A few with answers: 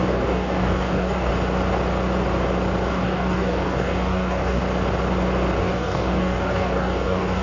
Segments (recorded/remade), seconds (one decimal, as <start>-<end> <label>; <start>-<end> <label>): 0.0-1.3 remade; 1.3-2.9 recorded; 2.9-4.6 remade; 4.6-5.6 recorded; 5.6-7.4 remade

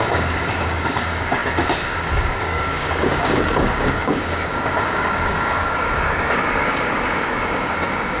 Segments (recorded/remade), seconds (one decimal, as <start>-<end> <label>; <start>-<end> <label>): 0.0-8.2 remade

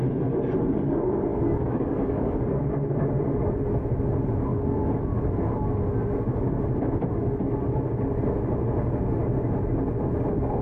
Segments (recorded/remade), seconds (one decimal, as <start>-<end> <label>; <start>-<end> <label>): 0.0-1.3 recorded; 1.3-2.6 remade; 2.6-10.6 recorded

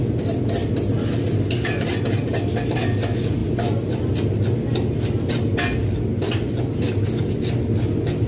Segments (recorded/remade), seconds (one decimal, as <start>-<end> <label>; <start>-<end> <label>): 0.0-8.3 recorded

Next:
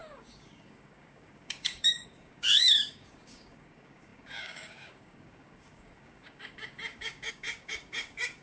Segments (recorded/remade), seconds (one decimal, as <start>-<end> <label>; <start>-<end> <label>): 0.0-8.4 remade